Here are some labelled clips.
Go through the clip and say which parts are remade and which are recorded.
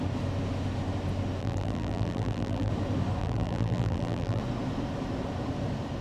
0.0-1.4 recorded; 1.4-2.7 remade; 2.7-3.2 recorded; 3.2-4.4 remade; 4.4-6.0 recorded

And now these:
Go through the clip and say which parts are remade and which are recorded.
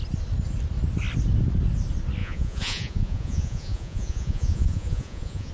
0.0-2.2 recorded; 2.2-5.5 remade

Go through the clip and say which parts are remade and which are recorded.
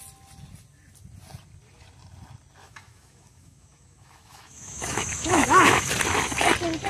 0.0-2.6 recorded; 2.6-5.9 remade; 5.9-6.9 recorded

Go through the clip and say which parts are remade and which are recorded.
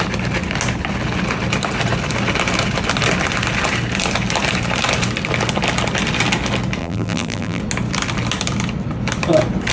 0.0-6.8 recorded; 6.8-7.6 remade; 7.6-9.7 recorded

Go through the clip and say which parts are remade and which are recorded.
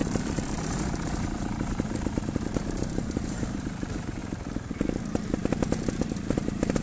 0.0-4.2 remade; 4.2-5.0 recorded; 5.0-5.4 remade; 5.4-6.0 recorded; 6.0-6.8 remade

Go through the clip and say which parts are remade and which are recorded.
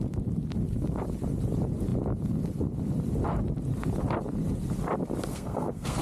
0.0-5.3 recorded; 5.3-6.0 remade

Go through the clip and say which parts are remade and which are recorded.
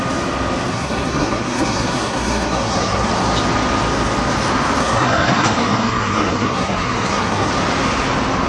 0.0-0.7 recorded; 0.7-3.1 remade; 3.1-4.8 recorded; 4.8-7.5 remade; 7.5-8.5 recorded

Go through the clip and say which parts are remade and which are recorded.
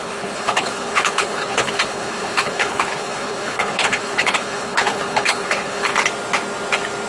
0.0-5.9 remade; 5.9-7.1 recorded